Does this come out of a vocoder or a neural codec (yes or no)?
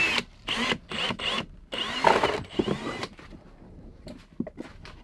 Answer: no